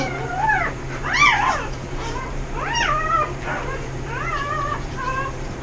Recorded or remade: remade